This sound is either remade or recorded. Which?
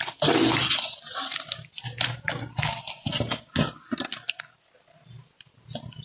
recorded